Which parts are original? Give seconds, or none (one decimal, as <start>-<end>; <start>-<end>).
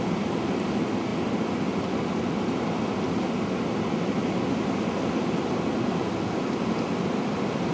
0.0-7.7